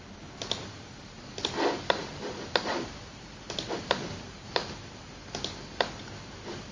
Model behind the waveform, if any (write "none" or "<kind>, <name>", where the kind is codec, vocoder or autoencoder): vocoder, BigVGAN v2